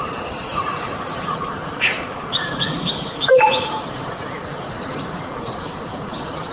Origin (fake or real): fake